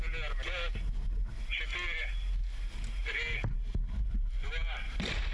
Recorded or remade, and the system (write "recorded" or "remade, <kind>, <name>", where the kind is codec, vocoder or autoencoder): recorded